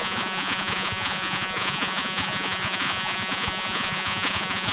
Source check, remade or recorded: remade